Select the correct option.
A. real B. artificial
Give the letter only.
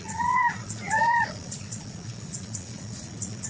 B